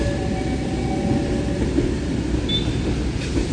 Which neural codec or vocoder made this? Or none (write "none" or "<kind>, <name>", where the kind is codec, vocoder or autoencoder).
none